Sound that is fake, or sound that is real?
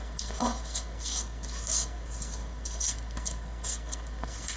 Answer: fake